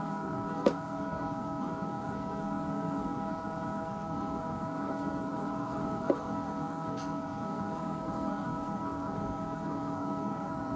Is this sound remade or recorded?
remade